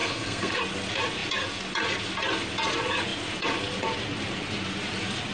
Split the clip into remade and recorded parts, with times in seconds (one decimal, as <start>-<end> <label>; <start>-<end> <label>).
0.0-0.6 remade; 0.6-5.3 recorded